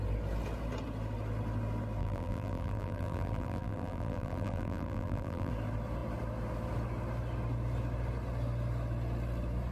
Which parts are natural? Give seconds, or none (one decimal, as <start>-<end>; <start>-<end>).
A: 0.0-2.0; 5.5-9.7

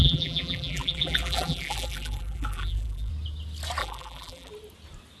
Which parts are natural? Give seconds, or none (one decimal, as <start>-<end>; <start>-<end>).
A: 3.1-3.8; 4.5-5.2